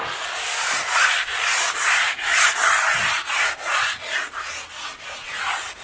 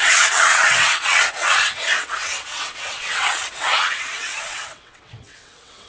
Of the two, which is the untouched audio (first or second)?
first